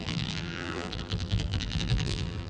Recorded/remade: remade